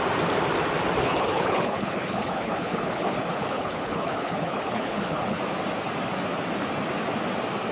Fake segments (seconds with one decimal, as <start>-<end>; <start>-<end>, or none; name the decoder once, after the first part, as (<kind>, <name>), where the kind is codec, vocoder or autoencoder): 1.0-5.4 (codec, HILCodec)